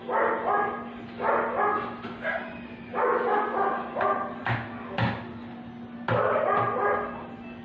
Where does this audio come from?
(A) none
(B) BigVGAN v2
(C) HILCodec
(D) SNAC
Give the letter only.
A